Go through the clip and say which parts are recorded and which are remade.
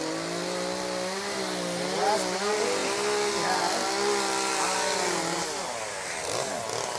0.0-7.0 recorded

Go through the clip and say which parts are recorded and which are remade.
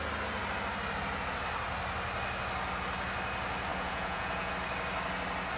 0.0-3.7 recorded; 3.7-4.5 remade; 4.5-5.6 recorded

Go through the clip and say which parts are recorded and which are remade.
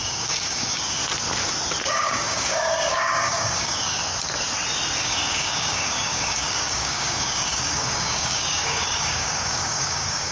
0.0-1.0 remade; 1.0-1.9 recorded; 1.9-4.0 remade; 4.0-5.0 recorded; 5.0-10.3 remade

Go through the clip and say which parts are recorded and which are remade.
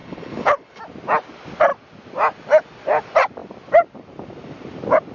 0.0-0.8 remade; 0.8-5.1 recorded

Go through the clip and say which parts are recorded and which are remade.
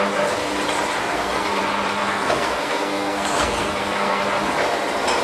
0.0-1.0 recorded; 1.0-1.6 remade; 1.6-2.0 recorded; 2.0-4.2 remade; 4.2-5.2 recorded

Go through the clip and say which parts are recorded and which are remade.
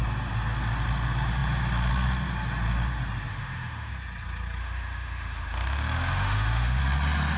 0.0-3.3 recorded; 3.3-3.9 remade; 3.9-4.6 recorded; 4.6-6.8 remade; 6.8-7.4 recorded